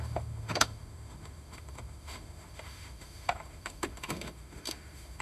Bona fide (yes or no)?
no